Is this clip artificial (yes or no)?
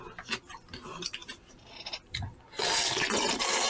no